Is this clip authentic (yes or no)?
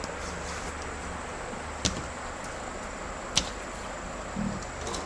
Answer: yes